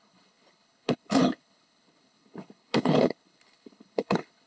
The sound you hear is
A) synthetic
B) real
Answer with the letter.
A